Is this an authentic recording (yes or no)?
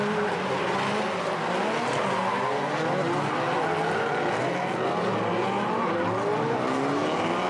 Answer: yes